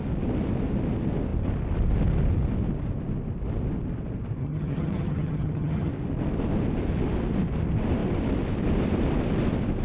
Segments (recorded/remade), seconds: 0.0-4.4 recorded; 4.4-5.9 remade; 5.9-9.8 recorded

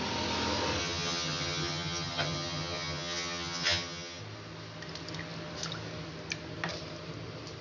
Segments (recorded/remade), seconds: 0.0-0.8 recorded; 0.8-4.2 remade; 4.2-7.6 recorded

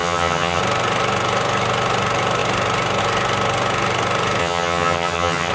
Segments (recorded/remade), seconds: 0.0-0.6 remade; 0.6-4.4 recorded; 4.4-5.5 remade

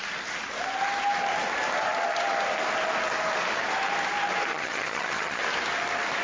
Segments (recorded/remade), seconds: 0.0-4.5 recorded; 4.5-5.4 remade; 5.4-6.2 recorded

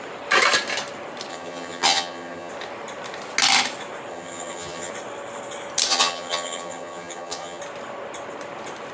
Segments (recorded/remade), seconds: 0.0-1.3 recorded; 1.3-2.5 remade; 2.5-4.1 recorded; 4.1-4.9 remade; 4.9-5.9 recorded; 5.9-7.6 remade; 7.6-8.9 recorded

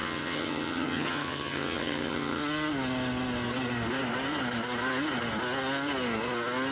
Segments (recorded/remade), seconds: 0.0-2.4 remade; 2.4-6.7 recorded